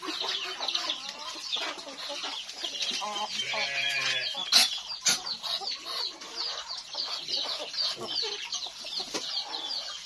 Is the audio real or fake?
real